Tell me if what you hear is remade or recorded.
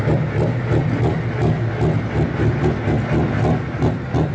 recorded